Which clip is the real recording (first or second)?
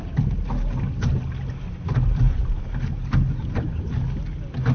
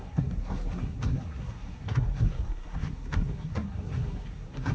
first